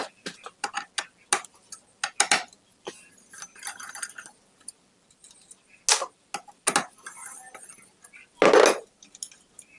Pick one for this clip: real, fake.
real